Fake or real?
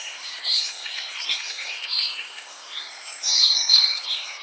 fake